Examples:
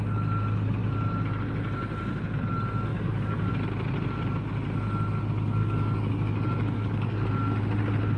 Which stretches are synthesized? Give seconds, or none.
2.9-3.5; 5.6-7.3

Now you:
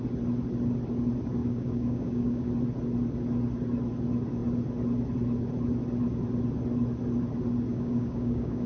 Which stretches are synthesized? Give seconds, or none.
1.4-2.5; 7.7-8.7

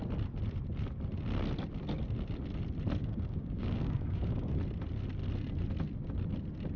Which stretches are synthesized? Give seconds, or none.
3.0-4.5

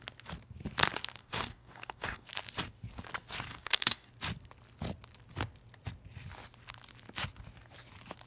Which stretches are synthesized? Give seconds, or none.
1.2-2.3; 3.5-4.1

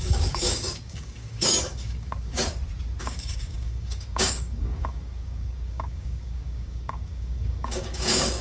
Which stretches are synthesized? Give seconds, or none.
0.0-2.5; 3.0-8.4